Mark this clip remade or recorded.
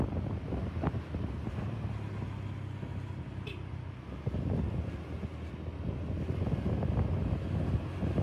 recorded